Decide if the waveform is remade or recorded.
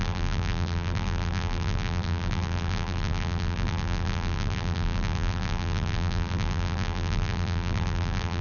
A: remade